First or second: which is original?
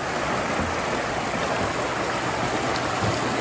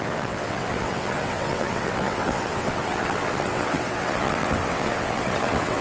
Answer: first